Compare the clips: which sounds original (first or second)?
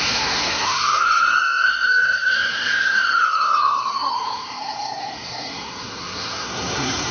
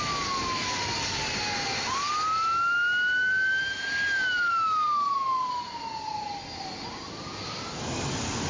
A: second